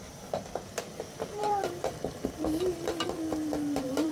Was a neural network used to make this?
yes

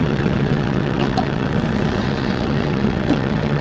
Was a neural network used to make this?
yes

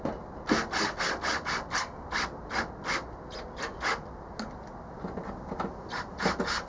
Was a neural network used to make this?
no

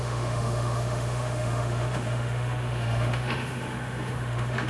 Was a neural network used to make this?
yes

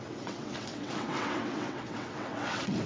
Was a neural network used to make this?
yes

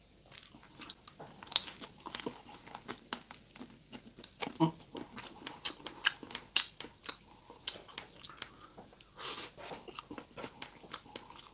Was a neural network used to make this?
no